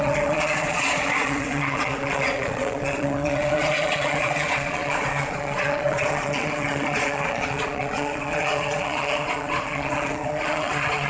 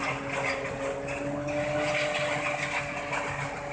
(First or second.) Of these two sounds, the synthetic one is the first